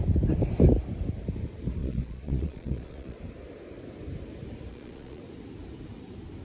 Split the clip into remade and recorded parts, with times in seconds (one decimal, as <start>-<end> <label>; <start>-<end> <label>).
0.0-1.8 recorded; 1.8-3.2 remade; 3.2-4.7 recorded; 4.7-5.2 remade; 5.2-6.4 recorded